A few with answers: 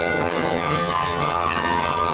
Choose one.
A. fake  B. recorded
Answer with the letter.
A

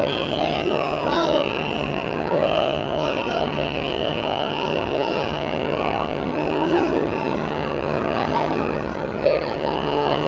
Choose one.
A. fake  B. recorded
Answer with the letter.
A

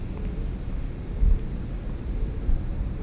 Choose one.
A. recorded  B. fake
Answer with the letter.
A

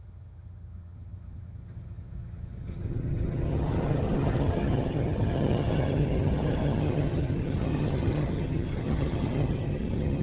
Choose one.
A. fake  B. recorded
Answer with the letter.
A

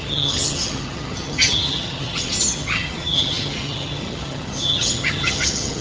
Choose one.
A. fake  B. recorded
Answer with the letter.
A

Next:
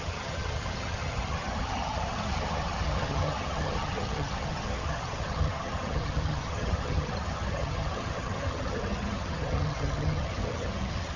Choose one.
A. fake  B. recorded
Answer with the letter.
A